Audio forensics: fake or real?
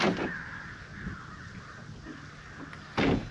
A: real